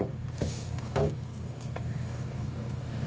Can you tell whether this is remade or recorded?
remade